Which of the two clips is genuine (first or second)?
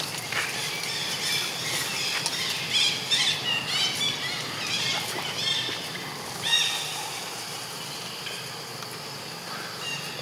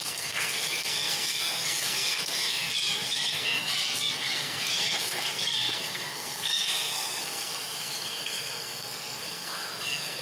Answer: first